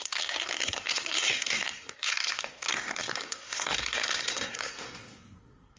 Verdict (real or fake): fake